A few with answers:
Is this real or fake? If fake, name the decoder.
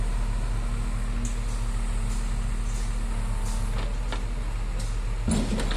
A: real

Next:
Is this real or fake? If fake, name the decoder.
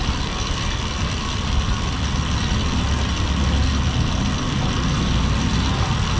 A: real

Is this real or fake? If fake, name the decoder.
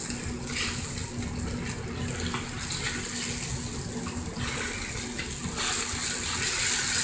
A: real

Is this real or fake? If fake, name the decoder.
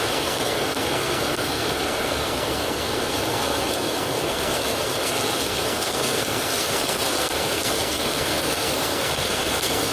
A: fake, codec, SNAC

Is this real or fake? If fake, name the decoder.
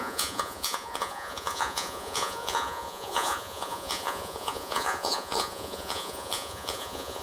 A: fake, vocoder, Vocos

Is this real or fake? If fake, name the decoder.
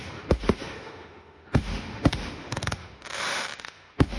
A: fake, autoencoder, DAC-VAE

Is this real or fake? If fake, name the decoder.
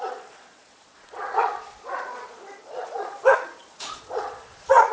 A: fake, vocoder, Vocos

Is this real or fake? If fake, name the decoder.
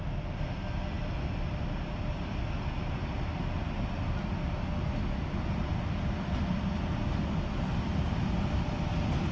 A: real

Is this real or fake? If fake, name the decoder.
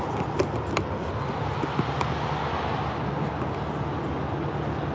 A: real